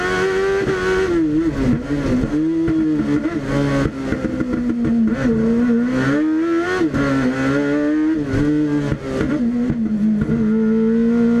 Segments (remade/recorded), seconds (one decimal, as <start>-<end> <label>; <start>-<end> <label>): 0.0-11.4 recorded